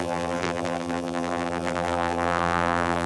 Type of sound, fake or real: fake